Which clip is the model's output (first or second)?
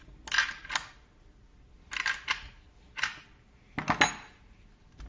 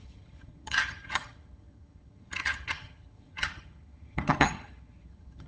second